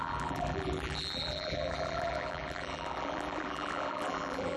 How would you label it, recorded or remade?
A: remade